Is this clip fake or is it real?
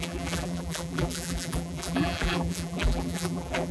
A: fake